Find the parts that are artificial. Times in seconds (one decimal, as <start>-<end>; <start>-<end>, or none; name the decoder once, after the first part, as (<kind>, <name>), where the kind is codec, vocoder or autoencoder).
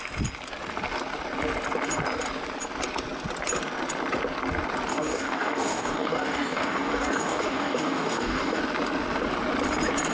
4.9-8.6 (codec, DAC)